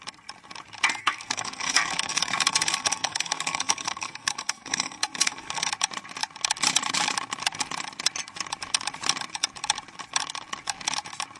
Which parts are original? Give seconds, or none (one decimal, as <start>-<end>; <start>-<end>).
0.0-1.0; 5.7-11.4